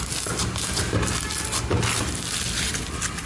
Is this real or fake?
real